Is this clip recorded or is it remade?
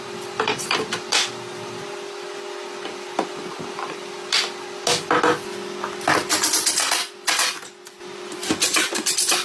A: recorded